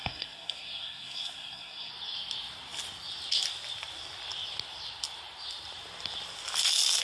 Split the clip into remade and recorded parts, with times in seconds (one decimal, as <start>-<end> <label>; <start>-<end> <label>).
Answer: 0.0-1.9 remade; 1.9-7.0 recorded